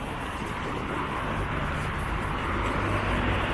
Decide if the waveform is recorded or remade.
recorded